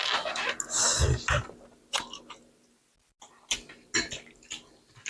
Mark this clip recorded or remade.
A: recorded